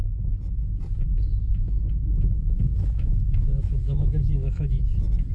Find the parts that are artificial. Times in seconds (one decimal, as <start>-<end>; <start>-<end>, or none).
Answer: 1.5-4.7